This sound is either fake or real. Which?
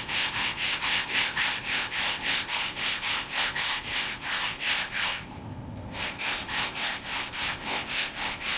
fake